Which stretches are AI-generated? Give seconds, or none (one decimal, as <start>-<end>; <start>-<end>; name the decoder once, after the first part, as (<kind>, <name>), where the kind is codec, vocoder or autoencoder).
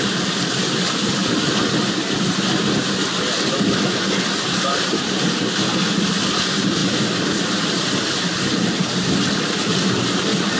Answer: none